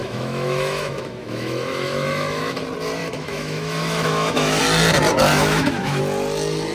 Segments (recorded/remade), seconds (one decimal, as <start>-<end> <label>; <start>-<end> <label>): 0.0-2.6 remade; 2.6-3.0 recorded; 3.0-4.6 remade; 4.6-5.3 recorded; 5.3-6.0 remade; 6.0-6.7 recorded